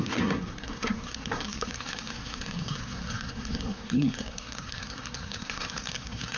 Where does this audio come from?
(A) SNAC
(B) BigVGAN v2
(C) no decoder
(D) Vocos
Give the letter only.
A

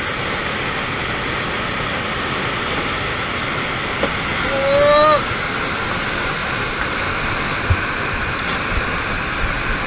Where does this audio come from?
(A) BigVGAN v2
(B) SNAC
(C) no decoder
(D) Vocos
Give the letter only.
C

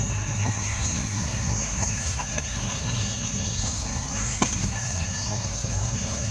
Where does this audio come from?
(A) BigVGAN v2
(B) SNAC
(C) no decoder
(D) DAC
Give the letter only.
B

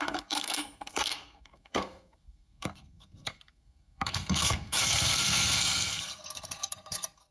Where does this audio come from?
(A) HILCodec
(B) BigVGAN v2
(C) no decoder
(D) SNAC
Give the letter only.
D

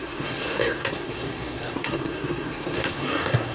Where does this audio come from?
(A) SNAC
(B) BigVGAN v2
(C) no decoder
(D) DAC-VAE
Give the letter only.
A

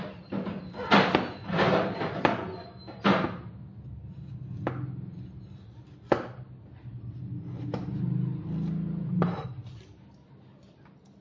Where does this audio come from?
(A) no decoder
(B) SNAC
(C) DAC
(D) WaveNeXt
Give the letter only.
A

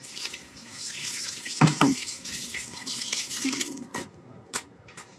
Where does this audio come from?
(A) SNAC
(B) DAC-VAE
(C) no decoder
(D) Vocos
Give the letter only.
A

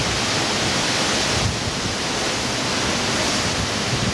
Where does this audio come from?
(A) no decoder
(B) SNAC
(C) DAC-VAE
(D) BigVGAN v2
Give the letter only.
A